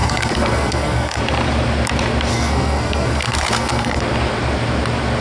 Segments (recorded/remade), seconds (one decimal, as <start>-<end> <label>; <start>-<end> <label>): 0.0-1.2 remade; 1.2-2.3 recorded; 2.3-4.0 remade; 4.0-5.2 recorded